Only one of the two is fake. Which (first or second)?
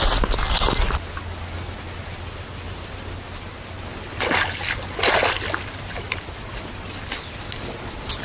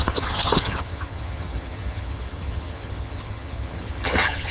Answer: second